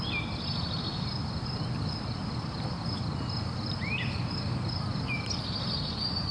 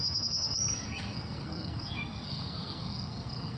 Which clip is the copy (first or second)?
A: second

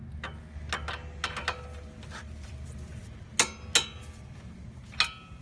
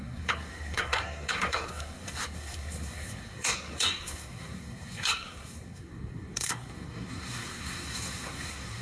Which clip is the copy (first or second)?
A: second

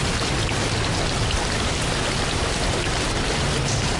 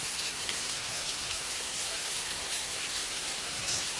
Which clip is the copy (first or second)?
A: second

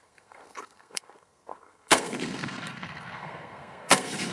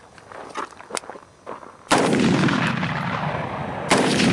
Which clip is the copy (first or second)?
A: first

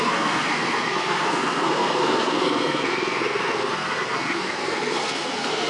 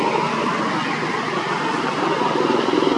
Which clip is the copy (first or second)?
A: first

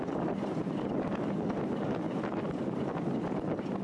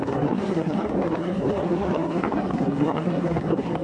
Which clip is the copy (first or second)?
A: second